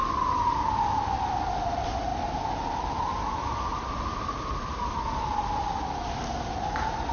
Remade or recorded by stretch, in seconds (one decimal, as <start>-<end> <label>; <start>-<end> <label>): 0.0-7.1 recorded